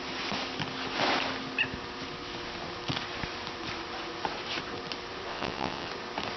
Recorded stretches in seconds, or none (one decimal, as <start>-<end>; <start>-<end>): 0.0-5.3; 5.9-6.4